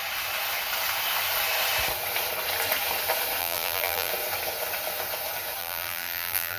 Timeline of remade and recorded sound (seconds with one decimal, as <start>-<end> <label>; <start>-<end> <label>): 0.0-3.4 recorded; 3.4-4.1 remade; 4.1-5.6 recorded; 5.6-6.6 remade

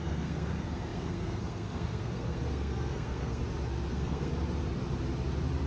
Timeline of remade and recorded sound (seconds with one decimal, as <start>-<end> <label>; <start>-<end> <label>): 0.0-3.4 remade; 3.4-3.9 recorded; 3.9-4.3 remade; 4.3-5.7 recorded